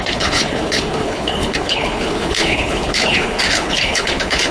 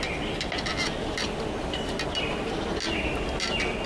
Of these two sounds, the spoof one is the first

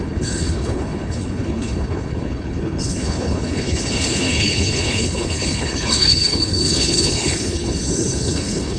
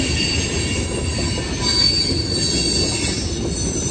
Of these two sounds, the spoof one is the first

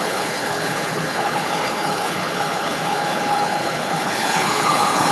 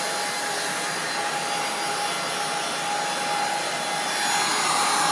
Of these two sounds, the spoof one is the first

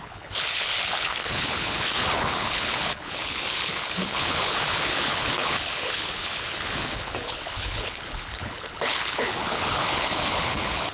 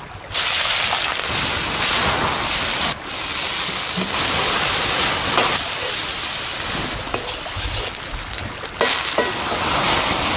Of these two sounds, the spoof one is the first